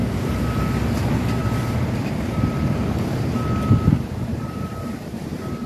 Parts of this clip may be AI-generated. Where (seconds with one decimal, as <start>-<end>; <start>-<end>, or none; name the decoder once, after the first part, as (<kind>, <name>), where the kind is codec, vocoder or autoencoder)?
0.0-0.6 (vocoder, BigVGAN v2); 4.3-5.3